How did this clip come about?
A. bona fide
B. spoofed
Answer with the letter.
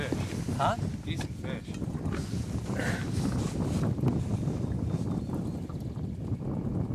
A